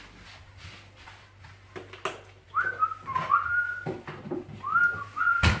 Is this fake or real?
real